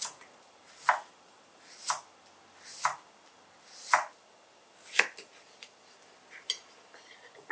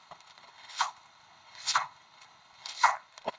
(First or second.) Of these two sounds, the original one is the first